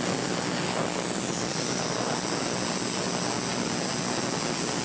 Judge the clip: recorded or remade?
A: recorded